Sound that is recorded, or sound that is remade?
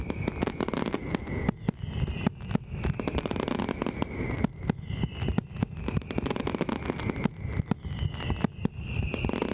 recorded